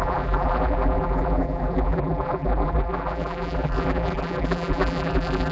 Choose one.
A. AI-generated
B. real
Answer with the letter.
A